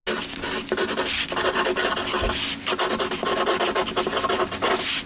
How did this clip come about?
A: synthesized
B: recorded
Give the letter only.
B